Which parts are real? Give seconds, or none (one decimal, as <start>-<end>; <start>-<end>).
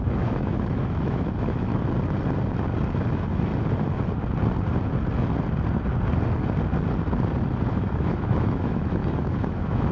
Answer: 1.7-3.0; 3.5-7.7